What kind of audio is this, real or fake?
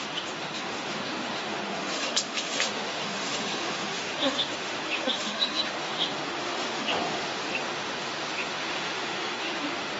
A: fake